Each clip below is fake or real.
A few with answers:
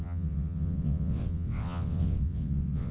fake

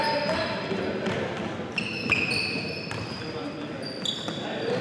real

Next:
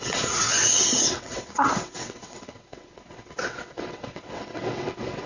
fake